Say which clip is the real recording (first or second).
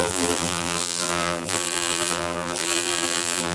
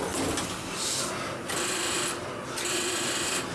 second